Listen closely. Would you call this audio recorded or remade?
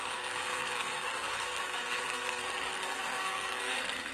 remade